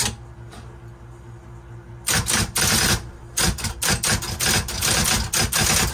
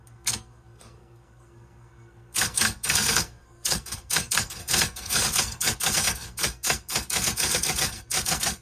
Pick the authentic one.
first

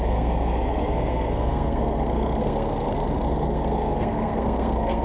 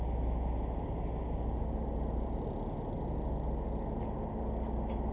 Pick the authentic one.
second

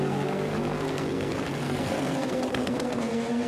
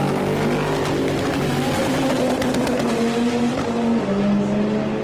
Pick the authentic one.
second